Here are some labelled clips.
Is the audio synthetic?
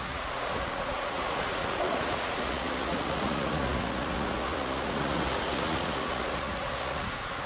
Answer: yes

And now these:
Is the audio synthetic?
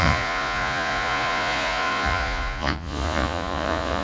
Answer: yes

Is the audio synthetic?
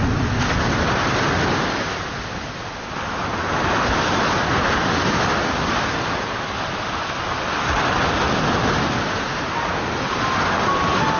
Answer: no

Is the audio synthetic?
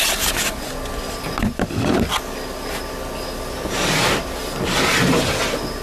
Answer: no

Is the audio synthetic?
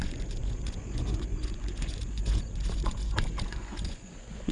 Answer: yes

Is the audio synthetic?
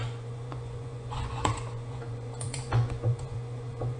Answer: yes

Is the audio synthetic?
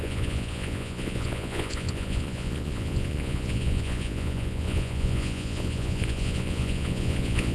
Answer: yes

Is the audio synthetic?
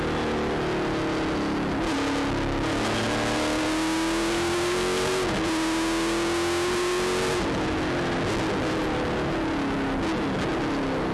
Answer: no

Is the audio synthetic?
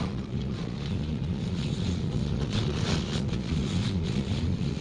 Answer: yes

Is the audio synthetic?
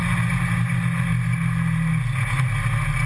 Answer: no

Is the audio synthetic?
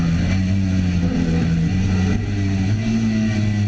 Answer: no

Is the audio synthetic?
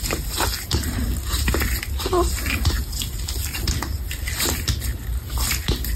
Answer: no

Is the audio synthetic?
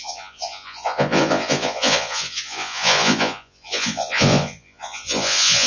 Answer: yes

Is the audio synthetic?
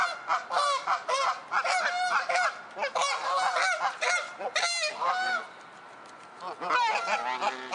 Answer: no